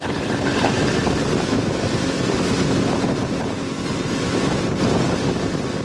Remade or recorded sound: recorded